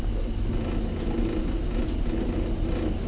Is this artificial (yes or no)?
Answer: no